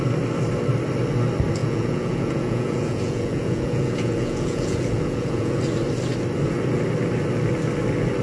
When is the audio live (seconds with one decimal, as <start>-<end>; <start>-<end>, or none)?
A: 0.0-1.6; 5.6-8.2